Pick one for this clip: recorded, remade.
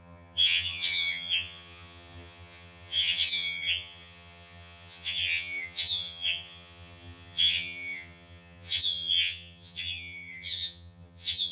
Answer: remade